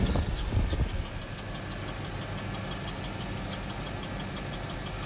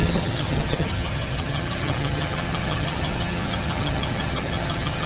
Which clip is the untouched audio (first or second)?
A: first